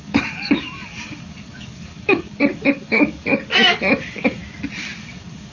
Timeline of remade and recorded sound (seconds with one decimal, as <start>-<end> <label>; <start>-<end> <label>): 0.0-4.4 remade; 4.4-5.0 recorded; 5.0-5.5 remade